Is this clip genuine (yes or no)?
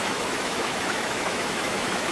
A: no